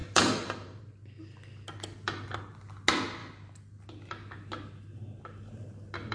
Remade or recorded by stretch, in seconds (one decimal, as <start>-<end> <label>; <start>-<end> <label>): 0.0-0.8 remade; 0.8-6.1 recorded

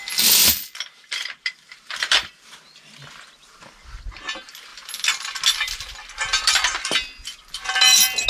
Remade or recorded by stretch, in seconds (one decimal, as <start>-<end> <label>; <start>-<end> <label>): 0.0-0.4 recorded; 0.4-2.3 remade; 2.3-8.3 recorded